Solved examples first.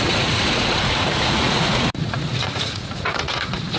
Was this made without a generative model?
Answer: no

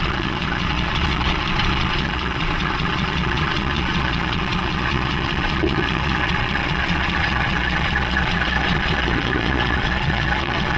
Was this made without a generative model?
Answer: no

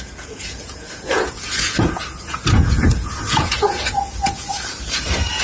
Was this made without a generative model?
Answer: no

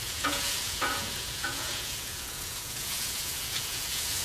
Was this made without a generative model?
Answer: no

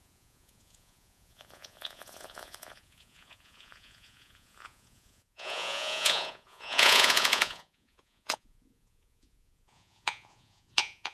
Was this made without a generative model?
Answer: no